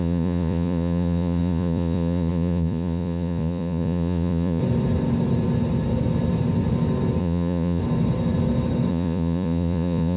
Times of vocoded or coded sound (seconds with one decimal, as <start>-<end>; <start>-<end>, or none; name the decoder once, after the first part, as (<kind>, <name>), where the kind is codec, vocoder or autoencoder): 0.0-4.6 (vocoder, Vocos); 7.2-7.8; 8.9-10.2